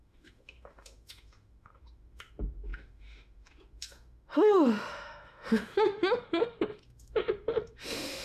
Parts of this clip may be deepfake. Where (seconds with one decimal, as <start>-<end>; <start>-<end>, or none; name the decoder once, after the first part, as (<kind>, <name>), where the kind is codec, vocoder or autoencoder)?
0.0-8.2 (autoencoder, DAC-VAE)